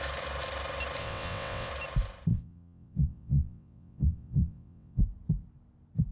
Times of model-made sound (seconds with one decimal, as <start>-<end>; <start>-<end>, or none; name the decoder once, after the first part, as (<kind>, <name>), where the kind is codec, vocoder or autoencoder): 1.0-1.7 (vocoder, WaveNeXt); 2.3-5.0